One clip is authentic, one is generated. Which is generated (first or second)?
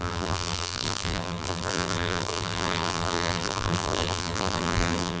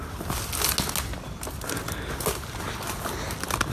first